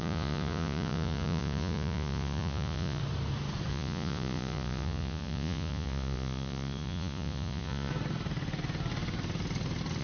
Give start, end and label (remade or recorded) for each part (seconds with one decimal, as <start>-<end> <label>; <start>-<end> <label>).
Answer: 0.0-3.0 remade; 3.0-3.7 recorded; 3.7-7.9 remade; 7.9-10.0 recorded